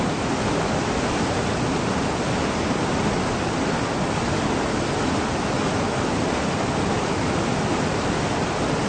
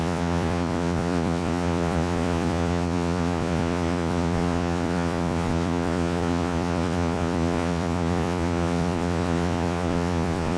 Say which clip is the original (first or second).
first